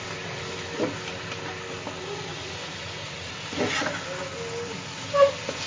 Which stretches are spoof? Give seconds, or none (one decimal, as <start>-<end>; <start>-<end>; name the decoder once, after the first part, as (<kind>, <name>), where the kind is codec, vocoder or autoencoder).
2.3-3.3 (vocoder, Vocos)